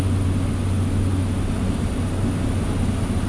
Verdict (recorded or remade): recorded